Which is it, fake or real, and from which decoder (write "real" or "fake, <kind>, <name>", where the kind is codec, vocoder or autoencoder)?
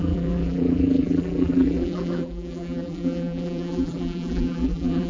fake, vocoder, BigVGAN v2